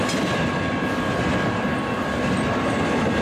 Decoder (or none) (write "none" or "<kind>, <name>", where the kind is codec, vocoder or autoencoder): none